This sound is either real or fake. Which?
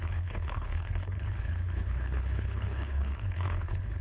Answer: fake